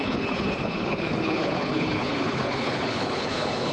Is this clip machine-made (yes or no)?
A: yes